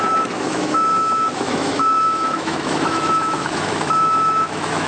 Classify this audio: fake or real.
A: fake